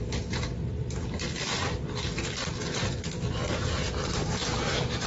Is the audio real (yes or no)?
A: yes